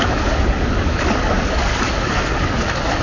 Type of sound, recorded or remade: remade